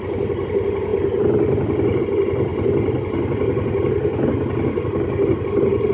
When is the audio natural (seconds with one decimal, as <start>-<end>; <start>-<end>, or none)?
0.0-5.9